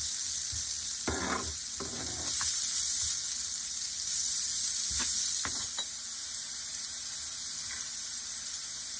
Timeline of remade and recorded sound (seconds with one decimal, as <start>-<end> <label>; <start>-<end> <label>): 0.0-9.0 recorded